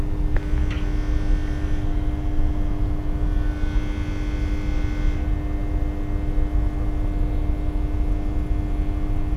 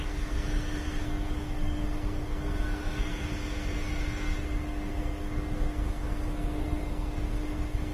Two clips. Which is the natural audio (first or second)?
first